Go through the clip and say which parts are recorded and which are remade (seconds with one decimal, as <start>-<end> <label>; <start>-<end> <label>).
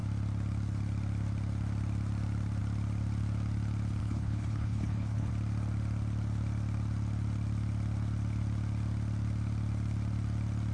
0.0-4.0 recorded; 4.0-5.3 remade; 5.3-10.7 recorded